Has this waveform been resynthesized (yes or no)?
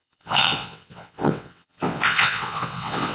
yes